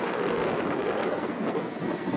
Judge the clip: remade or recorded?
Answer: remade